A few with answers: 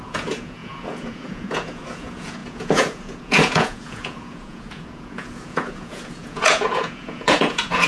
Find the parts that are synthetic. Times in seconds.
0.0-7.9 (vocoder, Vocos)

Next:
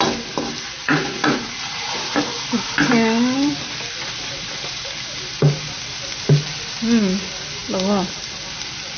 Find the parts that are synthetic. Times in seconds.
0.8-2.1 (vocoder, Vocos)

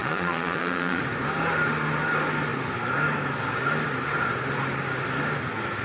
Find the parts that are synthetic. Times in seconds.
0.0-1.0 (vocoder, Vocos)

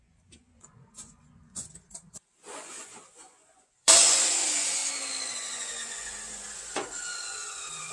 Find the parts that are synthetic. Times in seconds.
0.0-4.8 (vocoder, Vocos); 5.3-7.9

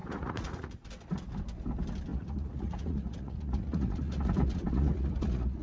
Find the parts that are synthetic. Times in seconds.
0.0-0.9 (vocoder, Vocos); 2.1-5.6

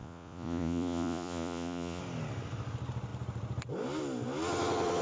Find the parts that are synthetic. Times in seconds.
0.0-2.0 (vocoder, Vocos)

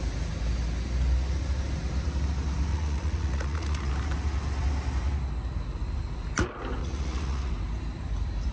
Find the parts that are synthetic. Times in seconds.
2.7-3.9 (vocoder, Vocos); 6.8-7.5